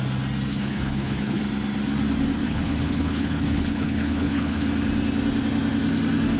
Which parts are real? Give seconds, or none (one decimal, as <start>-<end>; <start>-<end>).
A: 0.0-0.5; 1.4-2.4; 4.6-6.4